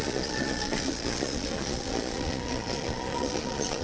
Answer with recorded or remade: remade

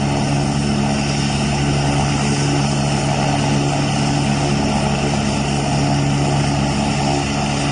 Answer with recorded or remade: recorded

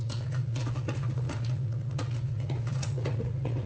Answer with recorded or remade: remade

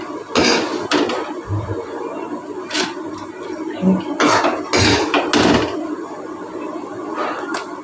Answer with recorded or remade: recorded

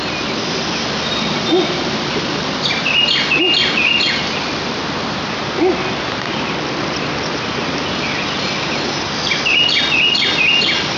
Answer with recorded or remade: recorded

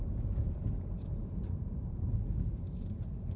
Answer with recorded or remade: remade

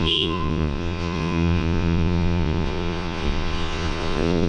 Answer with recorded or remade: remade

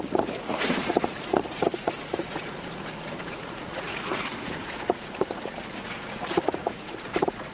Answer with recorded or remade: remade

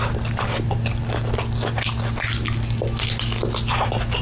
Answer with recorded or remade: recorded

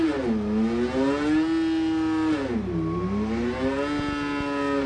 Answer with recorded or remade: recorded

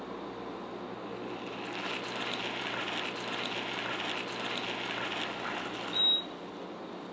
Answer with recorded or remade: recorded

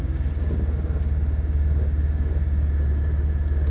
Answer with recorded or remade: recorded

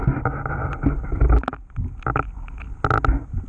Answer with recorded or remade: recorded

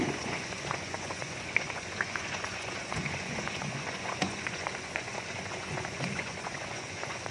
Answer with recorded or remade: remade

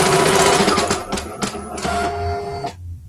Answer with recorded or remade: recorded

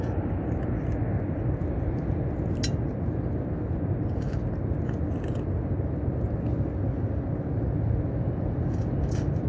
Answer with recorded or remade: recorded